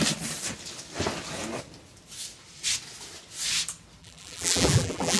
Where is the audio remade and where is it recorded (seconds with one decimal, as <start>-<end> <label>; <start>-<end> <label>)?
0.0-4.0 recorded; 4.0-5.2 remade